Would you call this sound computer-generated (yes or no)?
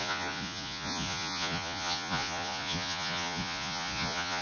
yes